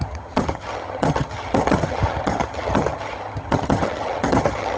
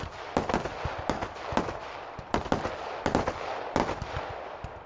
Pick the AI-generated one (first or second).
first